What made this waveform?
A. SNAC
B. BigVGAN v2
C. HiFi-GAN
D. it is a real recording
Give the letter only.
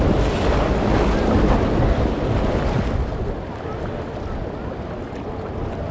D